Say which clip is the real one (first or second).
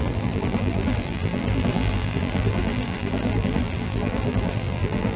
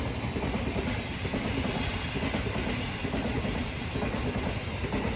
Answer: second